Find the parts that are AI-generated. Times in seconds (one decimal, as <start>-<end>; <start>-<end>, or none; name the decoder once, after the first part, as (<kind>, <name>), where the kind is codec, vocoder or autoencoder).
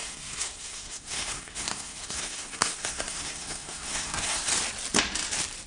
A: 0.0-4.5 (codec, SNAC)